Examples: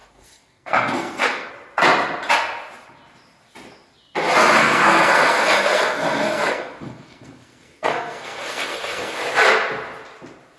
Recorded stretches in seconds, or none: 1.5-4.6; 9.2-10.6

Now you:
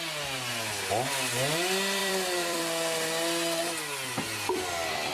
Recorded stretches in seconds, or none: 0.0-2.0; 2.6-5.1